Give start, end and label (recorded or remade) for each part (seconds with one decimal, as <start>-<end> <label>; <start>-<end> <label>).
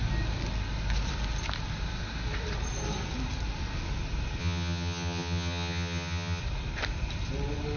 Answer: 0.0-4.4 recorded; 4.4-6.4 remade; 6.4-7.8 recorded